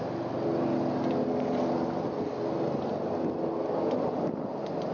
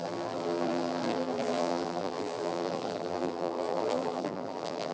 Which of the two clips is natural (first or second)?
first